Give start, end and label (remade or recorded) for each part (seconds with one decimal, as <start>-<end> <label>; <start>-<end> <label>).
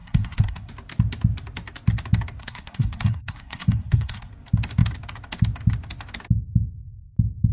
0.0-0.7 remade; 0.7-2.4 recorded; 2.4-4.3 remade; 4.3-7.5 recorded